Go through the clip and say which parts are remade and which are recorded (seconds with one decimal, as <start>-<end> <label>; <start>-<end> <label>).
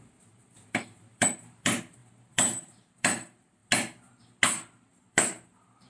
0.0-3.6 remade; 3.6-4.9 recorded; 4.9-5.9 remade